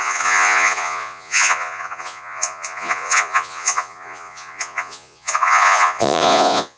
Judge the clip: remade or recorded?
remade